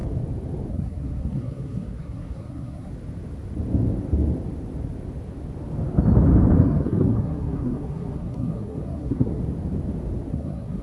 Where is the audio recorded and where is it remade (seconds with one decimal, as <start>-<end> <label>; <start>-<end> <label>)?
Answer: 0.0-0.7 recorded; 0.7-2.9 remade; 2.9-6.6 recorded; 6.6-9.4 remade; 9.4-10.3 recorded; 10.3-10.8 remade